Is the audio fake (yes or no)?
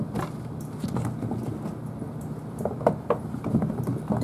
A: no